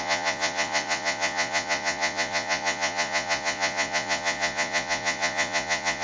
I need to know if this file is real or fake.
fake